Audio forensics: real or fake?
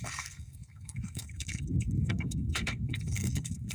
fake